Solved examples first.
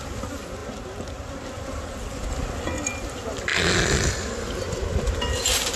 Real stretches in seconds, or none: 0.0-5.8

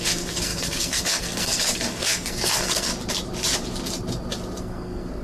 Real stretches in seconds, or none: 2.9-4.6